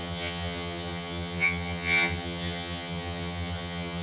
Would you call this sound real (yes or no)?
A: no